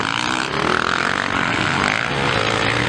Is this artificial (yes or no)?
no